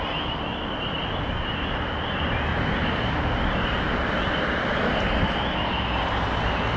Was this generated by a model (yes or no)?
no